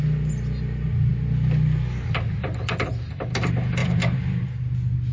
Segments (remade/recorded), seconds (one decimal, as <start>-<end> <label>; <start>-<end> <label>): 0.0-3.8 recorded; 3.8-4.5 remade; 4.5-5.1 recorded